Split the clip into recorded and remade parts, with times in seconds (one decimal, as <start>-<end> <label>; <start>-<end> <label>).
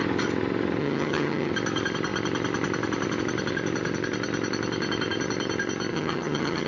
0.0-0.8 recorded; 0.8-1.5 remade; 1.5-5.9 recorded; 5.9-6.7 remade